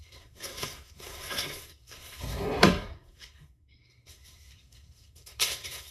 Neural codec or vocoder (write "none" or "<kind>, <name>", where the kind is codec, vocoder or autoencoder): codec, SNAC